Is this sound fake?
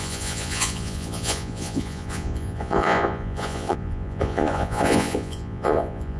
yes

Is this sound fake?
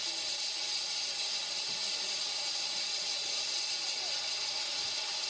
no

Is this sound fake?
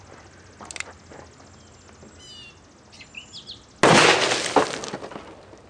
no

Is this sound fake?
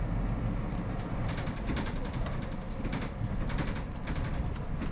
yes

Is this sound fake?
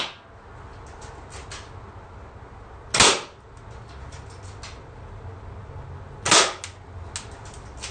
no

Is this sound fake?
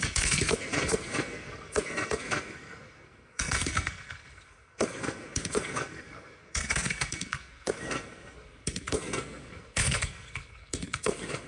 yes